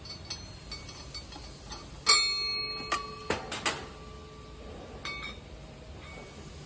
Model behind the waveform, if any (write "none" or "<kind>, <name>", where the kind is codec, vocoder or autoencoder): none